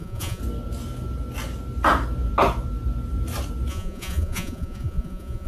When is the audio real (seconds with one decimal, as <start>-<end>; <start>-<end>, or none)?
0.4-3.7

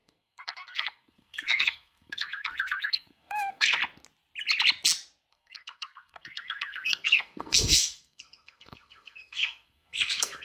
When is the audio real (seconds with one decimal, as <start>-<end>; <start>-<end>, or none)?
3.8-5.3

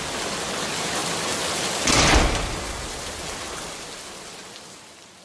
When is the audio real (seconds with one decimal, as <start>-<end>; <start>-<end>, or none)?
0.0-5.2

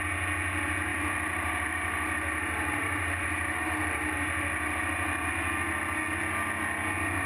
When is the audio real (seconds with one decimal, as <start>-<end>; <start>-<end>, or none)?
0.0-0.9; 5.3-7.3